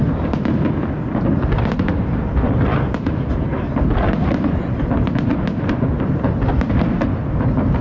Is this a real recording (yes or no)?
yes